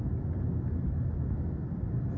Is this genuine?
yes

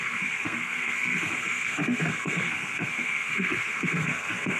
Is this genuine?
no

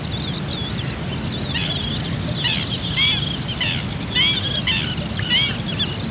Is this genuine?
yes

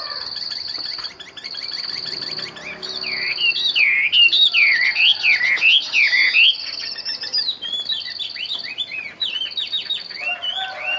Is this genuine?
yes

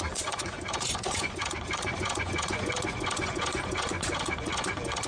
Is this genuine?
no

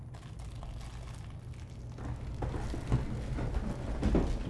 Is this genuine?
yes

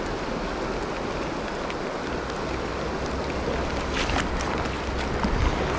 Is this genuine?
yes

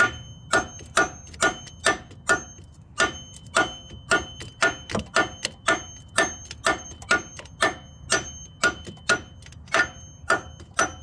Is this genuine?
yes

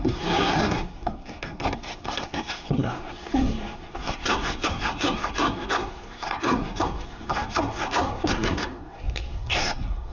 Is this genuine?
no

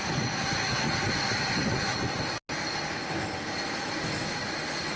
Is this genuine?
yes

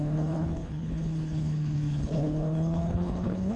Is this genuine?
no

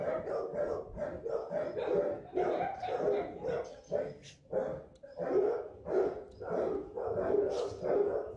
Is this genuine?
yes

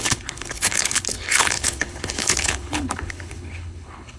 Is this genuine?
no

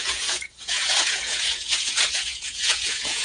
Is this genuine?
no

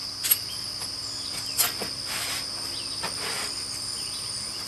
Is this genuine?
yes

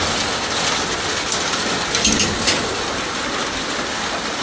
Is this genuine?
yes